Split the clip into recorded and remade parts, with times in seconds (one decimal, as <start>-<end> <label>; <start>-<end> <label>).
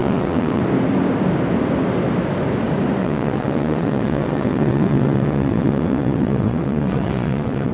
0.0-0.6 remade; 0.6-3.0 recorded; 3.0-7.7 remade